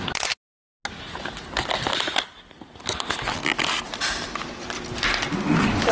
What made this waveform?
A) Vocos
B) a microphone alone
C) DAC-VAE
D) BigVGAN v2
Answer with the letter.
B